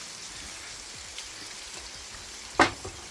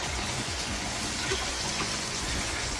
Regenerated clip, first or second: second